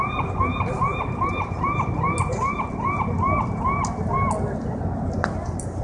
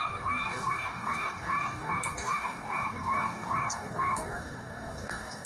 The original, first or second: first